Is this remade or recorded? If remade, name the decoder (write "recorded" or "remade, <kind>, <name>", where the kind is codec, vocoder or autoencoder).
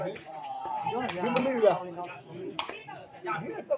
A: remade, vocoder, Vocos